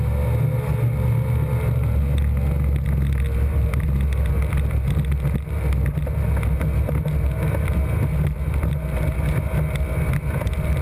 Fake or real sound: real